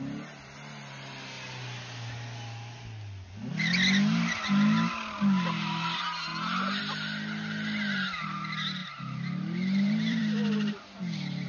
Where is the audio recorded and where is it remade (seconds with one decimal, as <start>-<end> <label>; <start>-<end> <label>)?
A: 0.0-8.8 recorded; 8.8-10.2 remade; 10.2-11.5 recorded

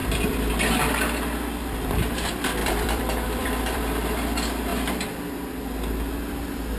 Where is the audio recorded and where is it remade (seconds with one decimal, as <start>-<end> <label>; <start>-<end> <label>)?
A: 0.0-0.5 remade; 0.5-2.6 recorded; 2.6-3.8 remade; 3.8-6.8 recorded

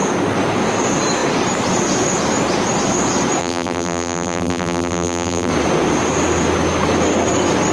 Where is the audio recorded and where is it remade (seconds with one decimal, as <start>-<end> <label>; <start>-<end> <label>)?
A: 0.0-3.4 recorded; 3.4-5.5 remade; 5.5-7.7 recorded

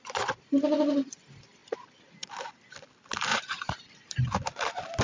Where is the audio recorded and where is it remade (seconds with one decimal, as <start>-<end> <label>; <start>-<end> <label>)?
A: 0.0-1.6 recorded; 1.6-2.5 remade; 2.5-3.3 recorded; 3.3-5.0 remade

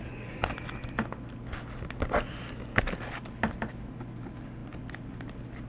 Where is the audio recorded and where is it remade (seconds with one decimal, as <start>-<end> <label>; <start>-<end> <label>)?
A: 0.0-5.7 recorded